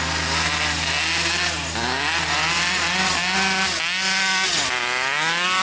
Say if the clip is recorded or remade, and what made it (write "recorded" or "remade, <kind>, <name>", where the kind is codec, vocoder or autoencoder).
recorded